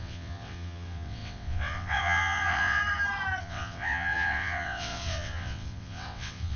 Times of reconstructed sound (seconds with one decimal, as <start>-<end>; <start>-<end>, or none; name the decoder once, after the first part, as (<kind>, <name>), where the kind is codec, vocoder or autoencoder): 0.0-2.8 (vocoder, WaveNeXt); 3.4-6.6